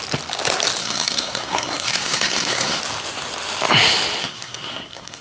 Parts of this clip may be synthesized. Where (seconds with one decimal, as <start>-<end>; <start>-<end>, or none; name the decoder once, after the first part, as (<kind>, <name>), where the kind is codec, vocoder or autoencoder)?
0.8-2.8 (codec, SNAC); 4.2-5.2